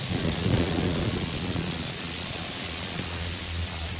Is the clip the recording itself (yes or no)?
no